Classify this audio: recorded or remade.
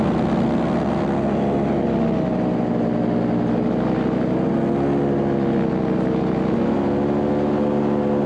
recorded